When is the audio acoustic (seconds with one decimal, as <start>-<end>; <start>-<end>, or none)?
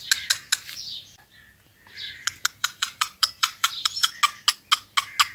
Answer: 0.0-2.6; 4.1-5.3